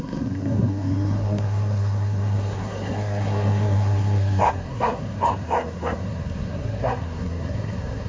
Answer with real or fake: fake